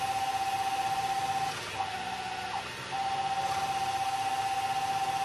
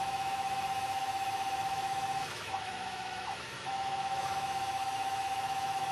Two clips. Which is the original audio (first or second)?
first